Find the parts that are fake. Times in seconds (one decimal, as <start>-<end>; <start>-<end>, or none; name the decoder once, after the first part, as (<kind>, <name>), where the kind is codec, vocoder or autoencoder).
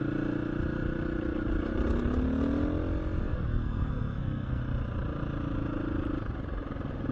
3.2-4.6 (codec, SNAC)